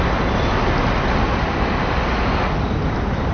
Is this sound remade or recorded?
recorded